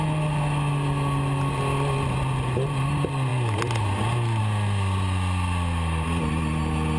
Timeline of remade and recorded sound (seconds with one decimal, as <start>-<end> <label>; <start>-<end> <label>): 0.0-7.0 recorded